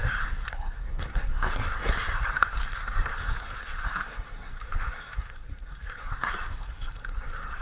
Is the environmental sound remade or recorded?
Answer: remade